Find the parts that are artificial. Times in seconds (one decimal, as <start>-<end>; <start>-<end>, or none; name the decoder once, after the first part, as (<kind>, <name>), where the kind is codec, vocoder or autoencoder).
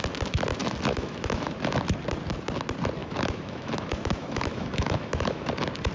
0.6-1.5 (autoencoder, DAC-VAE); 3.0-5.5